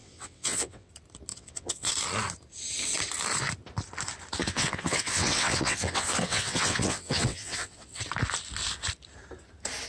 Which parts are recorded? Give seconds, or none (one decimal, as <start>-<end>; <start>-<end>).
0.9-1.3; 1.9-4.4; 8.0-9.9

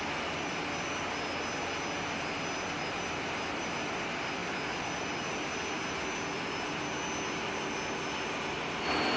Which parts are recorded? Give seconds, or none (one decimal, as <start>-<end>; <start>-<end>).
0.0-9.2

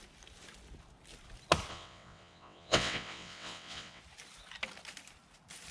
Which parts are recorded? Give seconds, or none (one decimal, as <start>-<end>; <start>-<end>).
0.0-1.7; 4.0-5.7